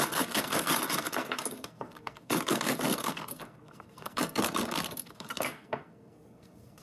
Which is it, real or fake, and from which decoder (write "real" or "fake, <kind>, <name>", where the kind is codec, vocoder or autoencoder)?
fake, codec, SNAC